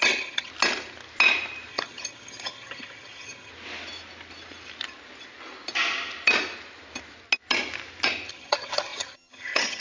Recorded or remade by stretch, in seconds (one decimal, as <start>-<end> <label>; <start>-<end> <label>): 0.0-0.5 remade; 0.5-1.7 recorded; 1.7-3.5 remade; 3.5-8.3 recorded; 8.3-9.8 remade